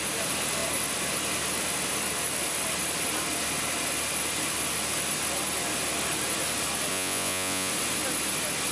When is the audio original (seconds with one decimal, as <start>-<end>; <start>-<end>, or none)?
0.0-6.9; 7.7-8.7